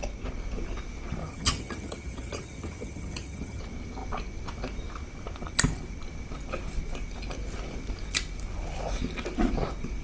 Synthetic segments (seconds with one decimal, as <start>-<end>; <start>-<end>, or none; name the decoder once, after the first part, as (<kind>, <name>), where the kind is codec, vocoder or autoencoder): 1.2-3.6 (vocoder, HiFi-GAN)